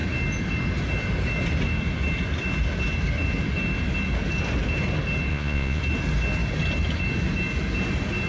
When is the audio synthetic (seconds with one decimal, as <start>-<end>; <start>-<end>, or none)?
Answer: 5.3-5.8